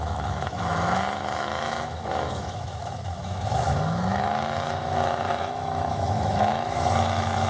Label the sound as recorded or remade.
remade